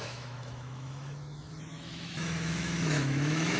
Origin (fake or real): fake